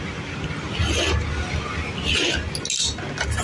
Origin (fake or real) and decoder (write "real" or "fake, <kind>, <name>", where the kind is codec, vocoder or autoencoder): real